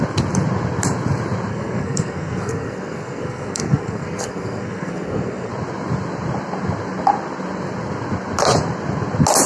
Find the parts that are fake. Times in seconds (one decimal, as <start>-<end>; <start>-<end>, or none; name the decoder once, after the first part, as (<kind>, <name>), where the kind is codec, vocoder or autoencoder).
1.5-5.5 (codec, SNAC)